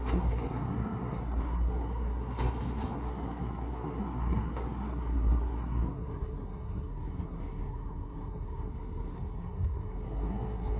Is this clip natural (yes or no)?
no